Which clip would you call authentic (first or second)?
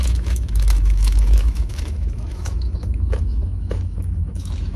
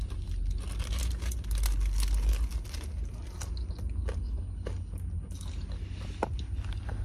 second